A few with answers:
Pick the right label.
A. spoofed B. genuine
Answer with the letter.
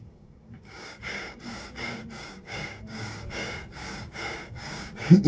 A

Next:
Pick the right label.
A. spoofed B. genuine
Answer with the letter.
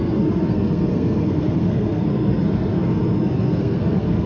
A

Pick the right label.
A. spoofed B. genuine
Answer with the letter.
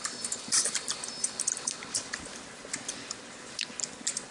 B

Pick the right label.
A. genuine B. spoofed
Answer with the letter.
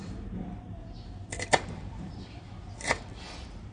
A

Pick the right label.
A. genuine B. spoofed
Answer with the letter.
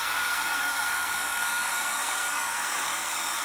B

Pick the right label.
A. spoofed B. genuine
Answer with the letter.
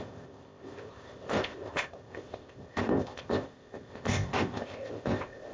A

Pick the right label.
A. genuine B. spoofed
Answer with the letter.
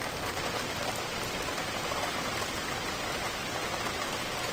A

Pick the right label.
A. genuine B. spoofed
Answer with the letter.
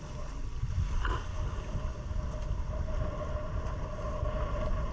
A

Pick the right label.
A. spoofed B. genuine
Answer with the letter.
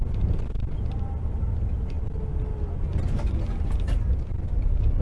B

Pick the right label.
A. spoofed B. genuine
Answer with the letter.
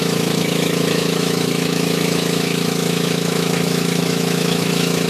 A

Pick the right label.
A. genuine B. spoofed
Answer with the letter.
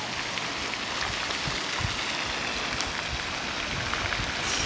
A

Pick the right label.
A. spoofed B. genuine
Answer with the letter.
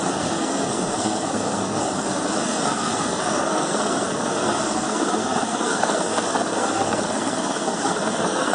A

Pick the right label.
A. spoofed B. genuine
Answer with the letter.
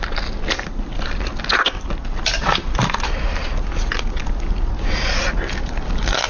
B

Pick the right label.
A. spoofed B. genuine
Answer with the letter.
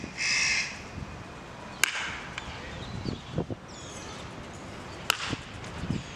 B